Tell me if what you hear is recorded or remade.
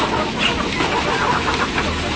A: recorded